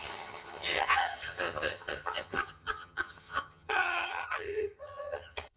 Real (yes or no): no